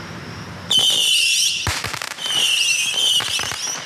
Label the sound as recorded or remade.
remade